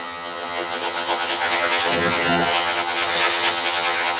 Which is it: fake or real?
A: fake